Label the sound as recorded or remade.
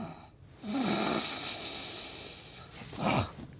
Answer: recorded